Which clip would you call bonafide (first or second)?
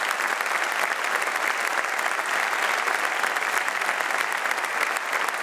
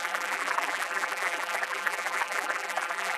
first